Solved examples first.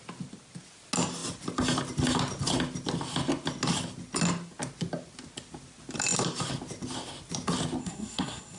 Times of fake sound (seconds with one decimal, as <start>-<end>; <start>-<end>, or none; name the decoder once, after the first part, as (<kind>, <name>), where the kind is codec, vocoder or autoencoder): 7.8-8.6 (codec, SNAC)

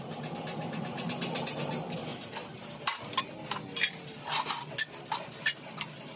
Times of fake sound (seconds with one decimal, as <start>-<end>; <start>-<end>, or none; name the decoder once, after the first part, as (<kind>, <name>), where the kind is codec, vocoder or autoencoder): none

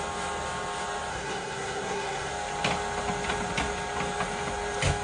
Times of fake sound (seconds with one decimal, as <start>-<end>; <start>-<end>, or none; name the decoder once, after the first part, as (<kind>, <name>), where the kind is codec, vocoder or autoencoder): 1.1-2.3 (codec, SNAC)